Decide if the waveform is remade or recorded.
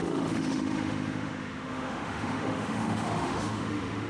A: remade